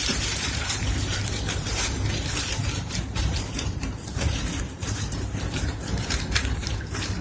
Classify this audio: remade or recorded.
remade